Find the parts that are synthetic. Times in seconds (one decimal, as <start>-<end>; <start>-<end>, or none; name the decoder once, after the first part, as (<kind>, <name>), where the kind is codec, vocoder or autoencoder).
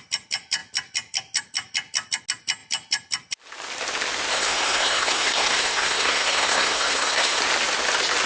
4.3-7.4 (codec, SNAC)